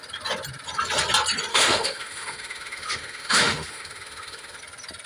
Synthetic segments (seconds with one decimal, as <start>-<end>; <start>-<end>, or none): 1.5-4.6